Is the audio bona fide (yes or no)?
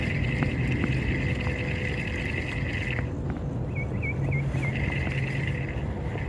yes